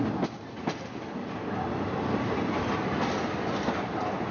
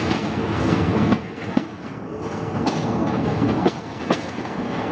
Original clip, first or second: first